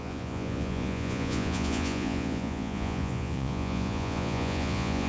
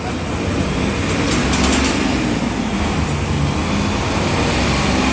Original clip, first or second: second